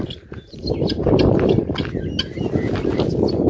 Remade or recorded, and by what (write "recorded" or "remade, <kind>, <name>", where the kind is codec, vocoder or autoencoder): recorded